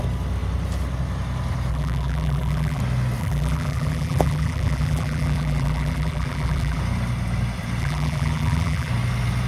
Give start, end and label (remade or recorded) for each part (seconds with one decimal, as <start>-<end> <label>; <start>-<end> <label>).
0.0-1.7 recorded; 1.7-2.8 remade; 2.8-3.2 recorded; 3.2-6.8 remade; 6.8-7.8 recorded; 7.8-8.9 remade; 8.9-9.5 recorded

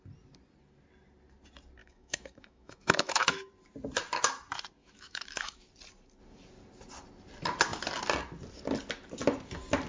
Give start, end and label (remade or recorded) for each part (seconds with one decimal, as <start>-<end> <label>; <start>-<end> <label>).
0.0-1.8 recorded; 1.8-3.5 remade; 3.5-4.8 recorded; 4.8-5.7 remade; 5.7-9.9 recorded

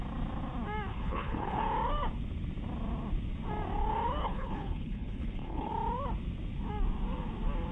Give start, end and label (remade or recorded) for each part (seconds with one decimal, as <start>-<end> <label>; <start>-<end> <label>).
0.0-0.9 recorded; 0.9-1.6 remade; 1.6-4.2 recorded; 4.2-5.7 remade; 5.7-7.7 recorded

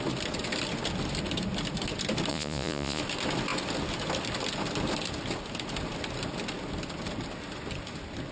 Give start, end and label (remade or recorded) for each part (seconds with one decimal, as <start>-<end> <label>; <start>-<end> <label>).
0.0-2.3 recorded; 2.3-3.0 remade; 3.0-8.3 recorded

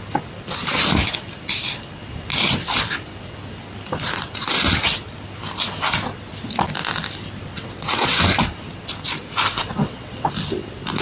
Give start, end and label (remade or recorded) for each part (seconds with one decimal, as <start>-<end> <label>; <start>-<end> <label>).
0.0-7.5 recorded; 7.5-8.3 remade; 8.3-9.8 recorded; 9.8-10.3 remade; 10.3-11.0 recorded